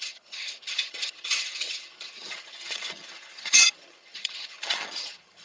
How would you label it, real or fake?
fake